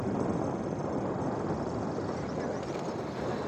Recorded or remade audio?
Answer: recorded